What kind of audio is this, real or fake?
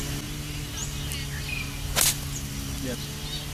real